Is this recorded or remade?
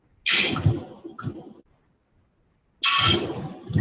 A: recorded